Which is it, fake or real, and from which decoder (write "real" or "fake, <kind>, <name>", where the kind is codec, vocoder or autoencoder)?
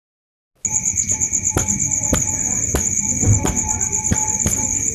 real